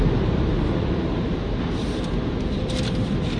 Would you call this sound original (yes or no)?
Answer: yes